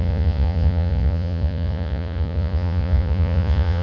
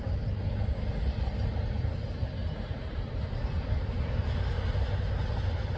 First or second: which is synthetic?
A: first